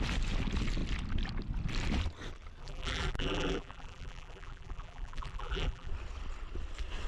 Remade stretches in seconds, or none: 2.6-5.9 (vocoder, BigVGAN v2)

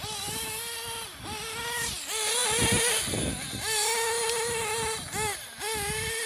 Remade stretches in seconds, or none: none

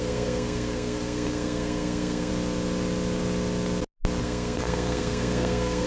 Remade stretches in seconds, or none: 0.0-2.3 (codec, SNAC); 4.2-5.9

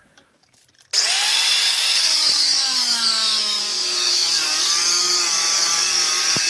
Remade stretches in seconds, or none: 0.0-0.6 (codec, DAC); 1.7-6.5

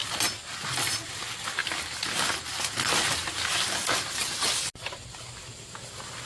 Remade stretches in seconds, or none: none